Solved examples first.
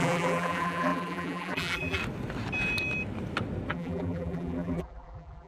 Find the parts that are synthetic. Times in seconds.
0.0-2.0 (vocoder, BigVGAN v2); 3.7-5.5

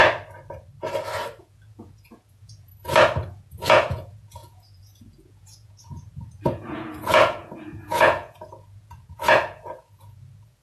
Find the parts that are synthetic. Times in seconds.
1.4-2.7 (vocoder, Vocos); 3.3-10.6

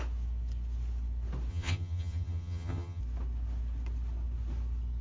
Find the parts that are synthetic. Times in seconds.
1.5-3.0 (vocoder, HiFi-GAN)

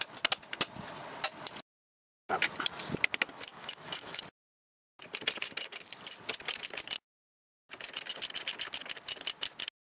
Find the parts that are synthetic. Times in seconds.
3.5-4.2 (autoencoder, DAC-VAE)

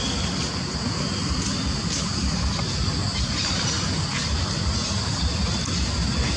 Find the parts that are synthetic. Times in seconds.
2.1-2.6 (vocoder, BigVGAN v2)